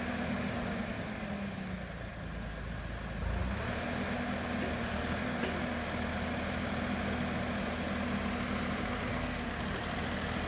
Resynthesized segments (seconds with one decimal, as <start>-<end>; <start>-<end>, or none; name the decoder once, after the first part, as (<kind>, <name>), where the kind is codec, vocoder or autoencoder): 9.1-9.6 (codec, SNAC)